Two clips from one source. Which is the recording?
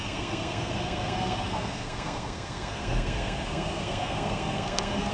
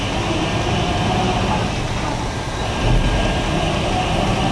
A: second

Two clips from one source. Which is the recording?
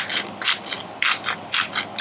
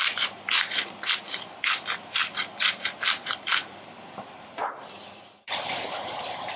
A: first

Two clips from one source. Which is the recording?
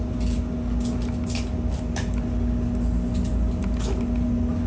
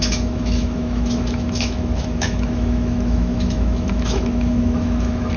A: first